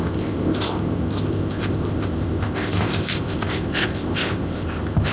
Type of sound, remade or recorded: remade